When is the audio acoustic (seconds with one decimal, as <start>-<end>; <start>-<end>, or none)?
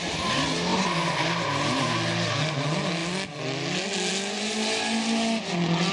0.0-5.9